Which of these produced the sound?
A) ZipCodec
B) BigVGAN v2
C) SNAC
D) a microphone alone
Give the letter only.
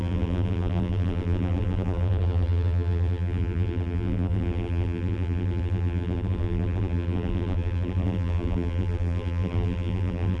B